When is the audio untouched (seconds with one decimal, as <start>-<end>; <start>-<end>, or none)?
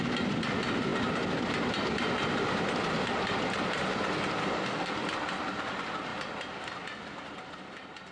0.0-4.4; 4.9-8.1